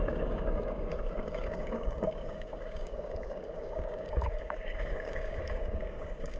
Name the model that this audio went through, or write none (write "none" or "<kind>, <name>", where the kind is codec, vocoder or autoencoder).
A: codec, DAC